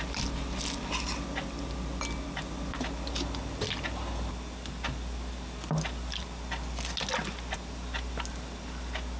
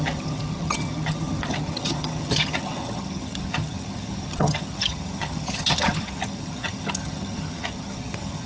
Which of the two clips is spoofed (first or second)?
second